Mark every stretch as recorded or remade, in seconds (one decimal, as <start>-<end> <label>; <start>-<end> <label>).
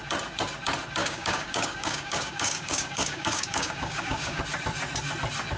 0.0-1.0 recorded; 1.0-4.4 remade; 4.4-5.6 recorded